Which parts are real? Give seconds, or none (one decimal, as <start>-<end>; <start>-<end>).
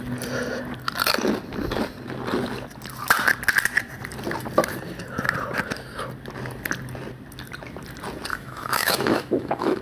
0.0-8.3